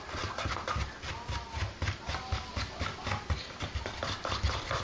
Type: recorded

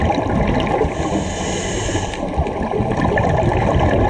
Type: recorded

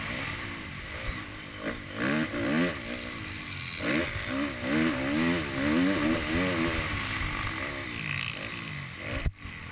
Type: recorded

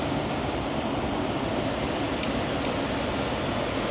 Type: recorded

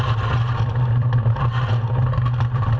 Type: recorded